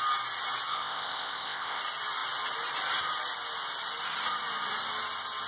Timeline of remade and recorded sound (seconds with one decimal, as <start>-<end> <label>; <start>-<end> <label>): 0.0-0.7 recorded; 0.7-1.8 remade; 1.8-5.5 recorded